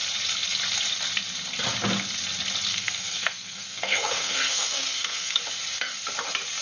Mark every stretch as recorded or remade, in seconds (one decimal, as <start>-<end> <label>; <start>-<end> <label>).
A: 0.0-2.7 recorded; 2.7-5.4 remade; 5.4-6.6 recorded